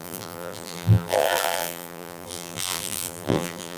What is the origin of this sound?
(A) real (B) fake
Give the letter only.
B